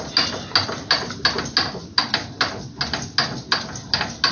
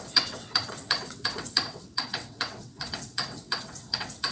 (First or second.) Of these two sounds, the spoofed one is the second